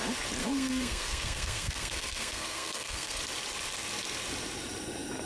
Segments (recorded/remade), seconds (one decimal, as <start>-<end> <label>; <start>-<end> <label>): 0.0-0.4 recorded; 0.4-3.2 remade; 3.2-5.3 recorded